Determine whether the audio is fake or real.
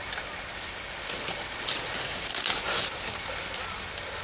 real